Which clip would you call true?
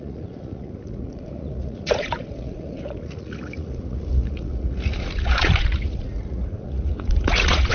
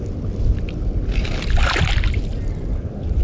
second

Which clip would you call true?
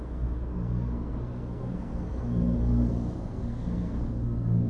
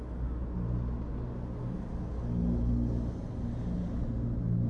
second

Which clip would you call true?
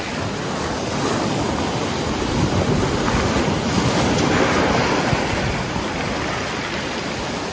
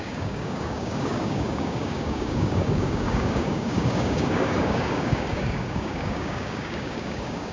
first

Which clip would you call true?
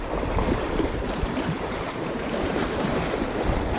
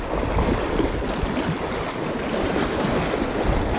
second